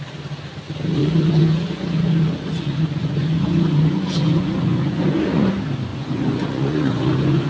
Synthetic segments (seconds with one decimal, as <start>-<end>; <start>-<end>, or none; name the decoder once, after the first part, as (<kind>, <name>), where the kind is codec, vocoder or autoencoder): 1.0-5.5 (vocoder, Vocos); 5.9-7.5